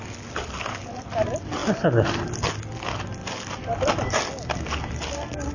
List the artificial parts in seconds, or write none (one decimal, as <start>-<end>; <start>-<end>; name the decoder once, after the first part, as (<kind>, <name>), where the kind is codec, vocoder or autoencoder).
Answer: none